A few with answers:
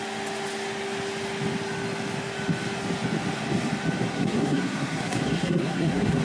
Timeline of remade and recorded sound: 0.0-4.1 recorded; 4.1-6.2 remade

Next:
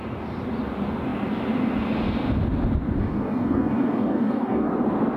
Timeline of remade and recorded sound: 0.0-3.0 recorded; 3.0-4.7 remade; 4.7-5.2 recorded

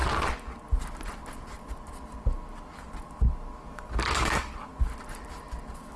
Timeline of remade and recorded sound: 0.0-3.6 recorded; 3.6-4.7 remade; 4.7-6.0 recorded